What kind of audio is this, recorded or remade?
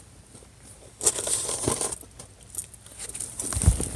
recorded